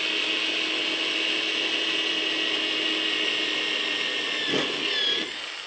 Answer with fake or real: real